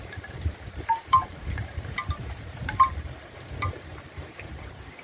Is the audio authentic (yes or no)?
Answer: no